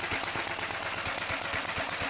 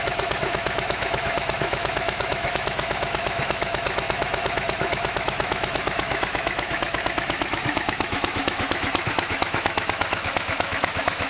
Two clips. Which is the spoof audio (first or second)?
second